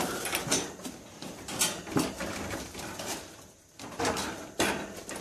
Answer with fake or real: real